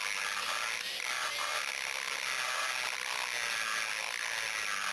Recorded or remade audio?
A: recorded